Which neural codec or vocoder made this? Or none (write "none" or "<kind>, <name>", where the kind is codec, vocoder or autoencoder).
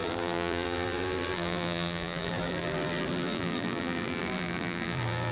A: vocoder, BigVGAN v2